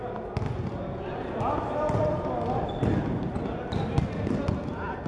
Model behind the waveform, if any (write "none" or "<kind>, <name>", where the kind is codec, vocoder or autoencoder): none